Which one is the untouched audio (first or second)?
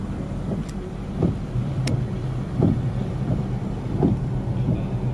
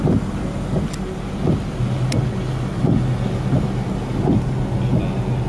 second